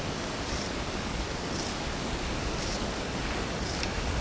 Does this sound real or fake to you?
fake